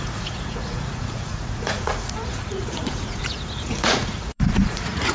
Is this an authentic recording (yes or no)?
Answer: no